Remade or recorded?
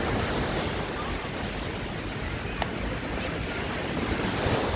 recorded